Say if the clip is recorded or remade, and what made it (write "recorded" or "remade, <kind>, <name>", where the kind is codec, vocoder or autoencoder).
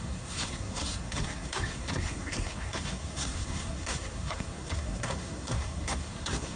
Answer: remade, codec, SNAC